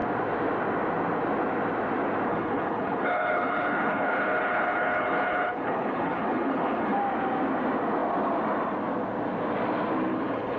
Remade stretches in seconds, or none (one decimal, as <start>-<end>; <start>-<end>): 2.3-7.0; 10.1-10.6